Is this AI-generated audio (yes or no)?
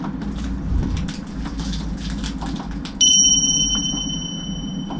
no